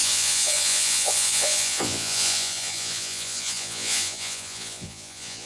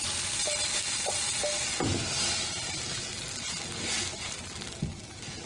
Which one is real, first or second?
second